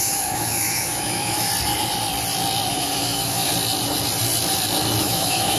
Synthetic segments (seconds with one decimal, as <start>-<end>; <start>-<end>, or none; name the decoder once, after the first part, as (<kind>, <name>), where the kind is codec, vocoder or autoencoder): 0.0-1.5 (autoencoder, DAC-VAE); 2.7-3.5; 5.0-5.6